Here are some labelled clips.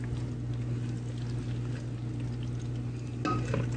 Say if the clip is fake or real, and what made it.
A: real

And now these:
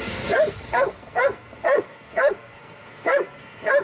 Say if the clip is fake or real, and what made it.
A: fake, codec, SNAC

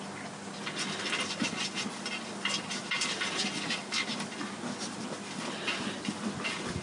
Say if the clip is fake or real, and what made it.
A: real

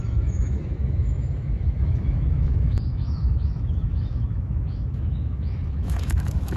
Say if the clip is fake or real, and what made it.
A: fake, autoencoder, DAC-VAE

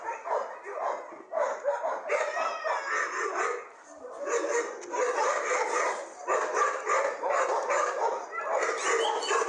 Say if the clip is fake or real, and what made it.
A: real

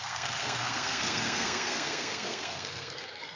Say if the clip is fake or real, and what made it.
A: fake, codec, SNAC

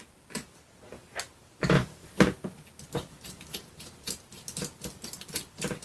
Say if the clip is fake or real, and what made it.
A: real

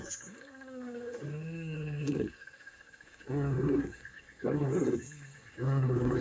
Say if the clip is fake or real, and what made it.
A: fake, codec, SNAC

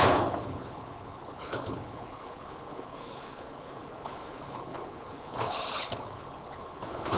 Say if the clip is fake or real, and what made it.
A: fake, codec, HILCodec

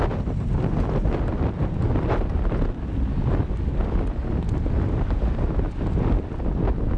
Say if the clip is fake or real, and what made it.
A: real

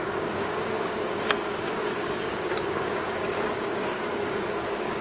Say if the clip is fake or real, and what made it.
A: fake, codec, DAC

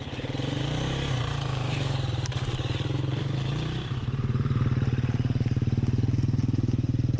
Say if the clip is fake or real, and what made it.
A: fake, vocoder, BigVGAN v2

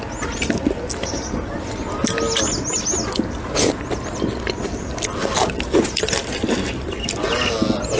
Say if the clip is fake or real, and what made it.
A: real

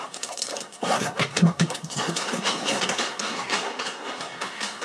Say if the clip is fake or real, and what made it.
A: fake, codec, SNAC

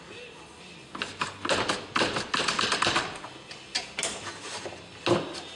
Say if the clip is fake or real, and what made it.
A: real